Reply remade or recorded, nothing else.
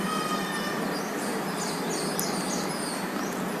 recorded